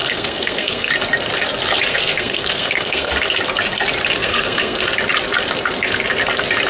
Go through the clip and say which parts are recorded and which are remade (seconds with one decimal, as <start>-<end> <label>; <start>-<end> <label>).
0.0-0.9 remade; 0.9-1.9 recorded; 1.9-3.1 remade; 3.1-4.2 recorded; 4.2-4.9 remade; 4.9-6.7 recorded